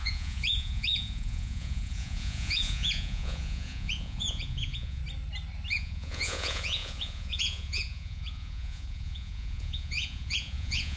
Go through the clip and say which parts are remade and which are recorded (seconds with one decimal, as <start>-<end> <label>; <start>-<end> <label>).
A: 0.0-5.0 remade; 5.0-5.7 recorded; 5.7-11.0 remade